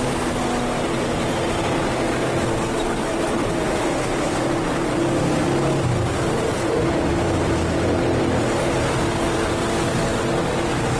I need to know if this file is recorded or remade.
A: recorded